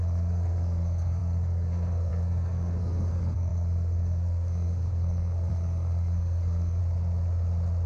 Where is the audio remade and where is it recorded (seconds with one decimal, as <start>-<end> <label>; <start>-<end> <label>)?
0.0-6.8 remade; 6.8-7.9 recorded